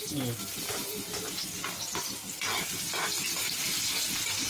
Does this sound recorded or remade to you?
recorded